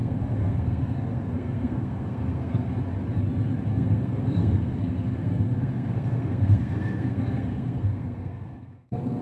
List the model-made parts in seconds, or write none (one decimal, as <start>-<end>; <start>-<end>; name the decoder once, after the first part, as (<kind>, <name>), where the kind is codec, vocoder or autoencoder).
0.0-2.7 (codec, SNAC); 3.7-9.2